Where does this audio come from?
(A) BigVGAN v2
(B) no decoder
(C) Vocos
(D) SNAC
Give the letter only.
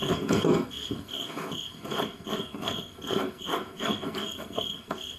D